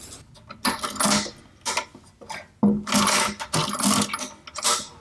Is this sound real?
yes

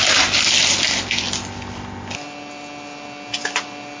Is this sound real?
yes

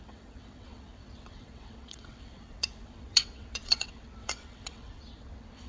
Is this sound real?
no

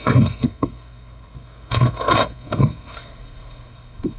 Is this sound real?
no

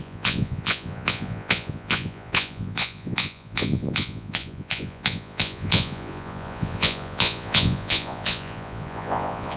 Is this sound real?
no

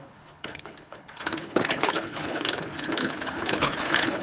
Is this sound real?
no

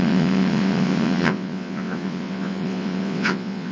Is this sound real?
no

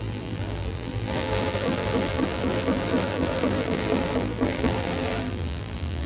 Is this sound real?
no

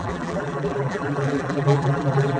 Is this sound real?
no